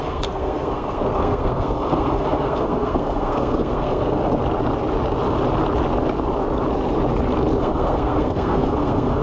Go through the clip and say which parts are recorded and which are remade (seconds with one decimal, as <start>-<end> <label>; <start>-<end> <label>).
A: 0.0-4.2 remade; 4.2-7.6 recorded; 7.6-9.2 remade